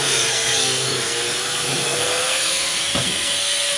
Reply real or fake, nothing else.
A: fake